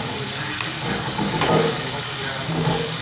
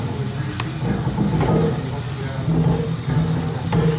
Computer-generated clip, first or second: first